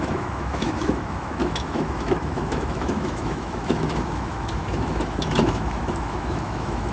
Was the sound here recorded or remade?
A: remade